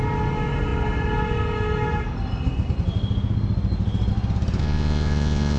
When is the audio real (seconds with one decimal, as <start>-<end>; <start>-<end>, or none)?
0.0-4.6